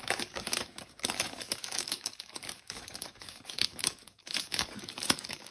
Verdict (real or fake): fake